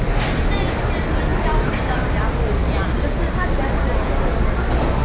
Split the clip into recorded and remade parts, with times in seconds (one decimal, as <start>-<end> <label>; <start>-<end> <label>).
0.0-5.0 recorded